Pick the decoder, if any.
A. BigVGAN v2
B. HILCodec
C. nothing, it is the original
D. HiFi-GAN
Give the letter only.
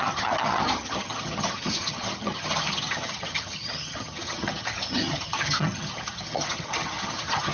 D